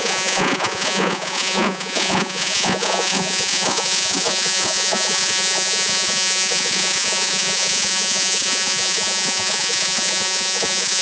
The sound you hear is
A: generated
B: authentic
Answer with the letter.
A